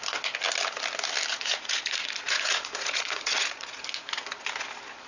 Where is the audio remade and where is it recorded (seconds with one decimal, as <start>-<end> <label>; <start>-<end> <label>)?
0.0-1.3 recorded; 1.3-3.8 remade; 3.8-5.1 recorded